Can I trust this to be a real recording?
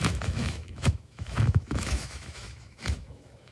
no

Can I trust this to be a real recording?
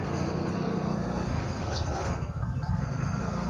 no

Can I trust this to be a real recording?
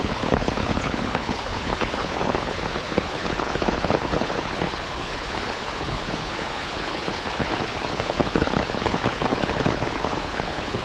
no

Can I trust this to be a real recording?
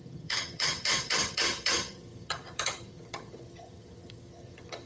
no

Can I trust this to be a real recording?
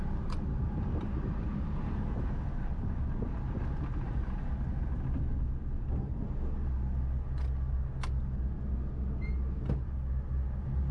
yes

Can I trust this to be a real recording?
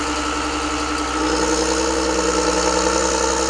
yes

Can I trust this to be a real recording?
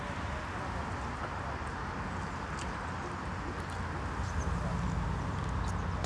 yes